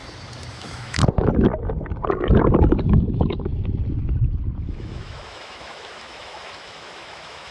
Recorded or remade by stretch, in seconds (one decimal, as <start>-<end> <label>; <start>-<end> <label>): 0.0-0.5 recorded; 0.5-1.0 remade; 1.0-2.9 recorded; 2.9-3.5 remade; 3.5-4.7 recorded; 4.7-7.5 remade